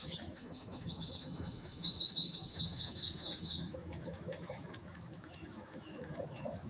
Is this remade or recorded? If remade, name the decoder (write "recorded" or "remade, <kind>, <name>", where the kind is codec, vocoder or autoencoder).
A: remade, autoencoder, DAC-VAE